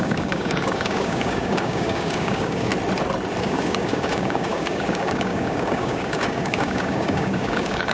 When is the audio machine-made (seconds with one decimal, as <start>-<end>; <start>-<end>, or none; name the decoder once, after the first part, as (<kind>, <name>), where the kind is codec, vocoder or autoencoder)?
0.0-2.7 (codec, DAC); 3.4-7.9